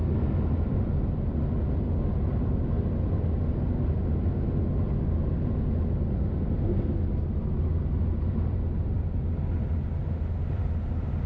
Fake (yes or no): no